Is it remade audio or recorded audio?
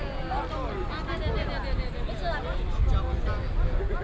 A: recorded